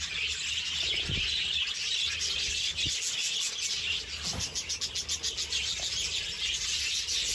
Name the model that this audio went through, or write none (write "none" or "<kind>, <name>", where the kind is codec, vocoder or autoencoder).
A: none